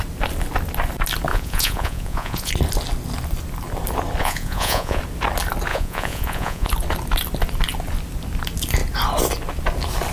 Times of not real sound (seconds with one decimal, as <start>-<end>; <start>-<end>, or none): 1.3-2.5; 4.2-5.0; 5.7-6.7